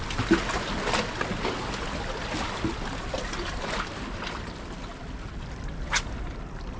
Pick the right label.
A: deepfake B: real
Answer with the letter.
B